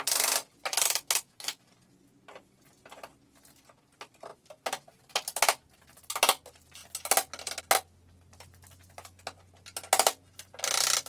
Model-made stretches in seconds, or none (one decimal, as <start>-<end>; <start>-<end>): 0.7-1.6